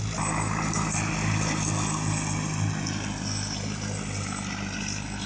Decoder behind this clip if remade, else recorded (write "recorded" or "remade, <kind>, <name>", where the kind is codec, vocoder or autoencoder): recorded